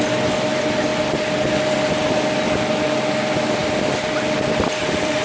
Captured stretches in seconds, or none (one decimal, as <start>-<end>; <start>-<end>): 0.0-5.2